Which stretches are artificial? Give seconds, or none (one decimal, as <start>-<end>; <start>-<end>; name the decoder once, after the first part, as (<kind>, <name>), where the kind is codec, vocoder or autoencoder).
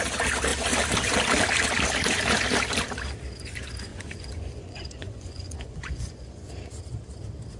3.9-6.5 (vocoder, Vocos)